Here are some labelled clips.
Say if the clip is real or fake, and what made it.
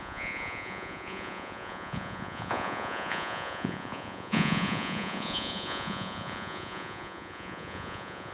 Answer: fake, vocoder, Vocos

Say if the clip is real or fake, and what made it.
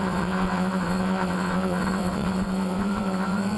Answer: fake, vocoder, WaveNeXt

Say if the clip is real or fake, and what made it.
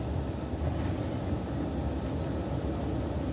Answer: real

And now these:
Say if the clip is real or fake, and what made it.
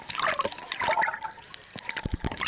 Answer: fake, vocoder, BigVGAN v2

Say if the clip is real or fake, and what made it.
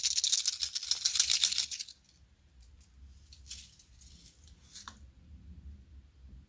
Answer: real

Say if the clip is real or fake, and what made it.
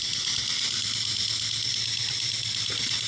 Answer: real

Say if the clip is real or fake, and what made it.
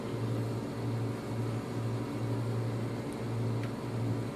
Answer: real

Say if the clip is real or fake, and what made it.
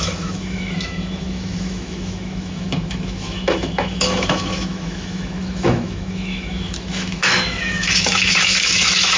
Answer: fake, autoencoder, DAC-VAE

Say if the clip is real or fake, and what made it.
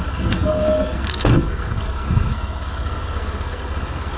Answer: fake, codec, SNAC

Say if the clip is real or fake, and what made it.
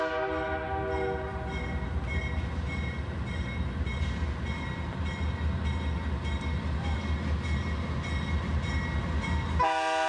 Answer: real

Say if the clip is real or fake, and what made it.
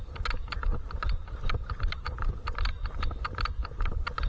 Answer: real